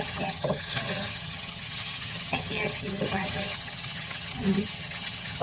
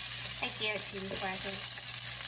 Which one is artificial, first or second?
first